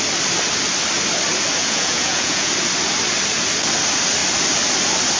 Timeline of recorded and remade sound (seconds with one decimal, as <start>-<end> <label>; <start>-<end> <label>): 0.0-1.6 recorded; 1.6-2.5 remade; 2.5-5.2 recorded